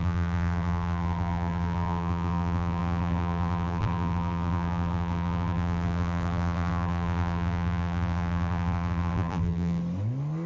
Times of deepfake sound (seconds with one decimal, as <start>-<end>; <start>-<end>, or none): 0.0-9.8